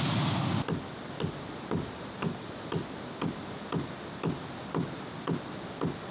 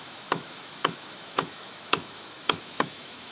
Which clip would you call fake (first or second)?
second